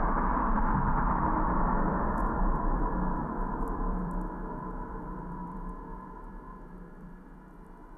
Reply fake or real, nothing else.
fake